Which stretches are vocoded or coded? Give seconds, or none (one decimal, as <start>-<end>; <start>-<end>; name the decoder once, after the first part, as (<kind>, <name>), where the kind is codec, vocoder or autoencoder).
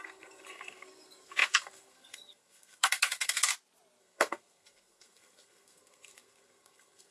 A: 0.0-3.5 (codec, SNAC); 4.0-7.1